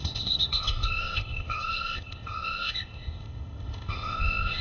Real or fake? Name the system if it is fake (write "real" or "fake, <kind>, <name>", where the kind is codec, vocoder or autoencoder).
fake, codec, ZipCodec